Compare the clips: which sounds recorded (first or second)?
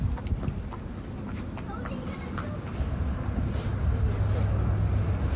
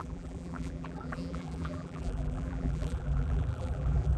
first